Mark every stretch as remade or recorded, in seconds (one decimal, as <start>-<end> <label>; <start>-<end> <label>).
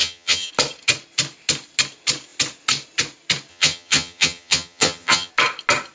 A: 0.0-0.5 remade; 0.5-3.5 recorded; 3.5-5.3 remade; 5.3-5.9 recorded